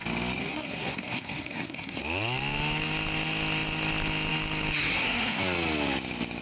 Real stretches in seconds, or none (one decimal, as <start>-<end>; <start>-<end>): 0.0-0.4; 2.0-4.8; 5.4-6.4